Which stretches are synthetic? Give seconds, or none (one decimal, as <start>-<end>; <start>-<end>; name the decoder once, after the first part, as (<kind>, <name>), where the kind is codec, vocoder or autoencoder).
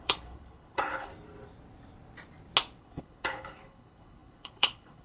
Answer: 0.0-1.1 (codec, HILCodec); 2.8-5.0